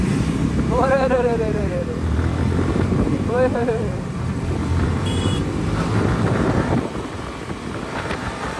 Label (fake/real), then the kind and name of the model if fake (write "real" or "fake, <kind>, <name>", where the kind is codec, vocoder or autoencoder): fake, vocoder, BigVGAN v2